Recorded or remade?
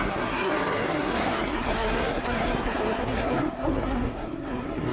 remade